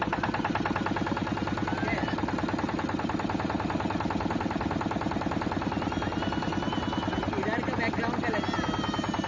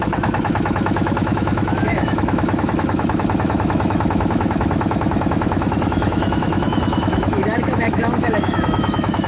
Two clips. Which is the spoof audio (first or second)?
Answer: second